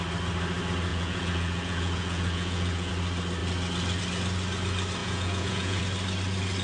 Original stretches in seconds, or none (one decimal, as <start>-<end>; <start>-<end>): 0.0-0.9; 2.9-5.0; 5.8-6.6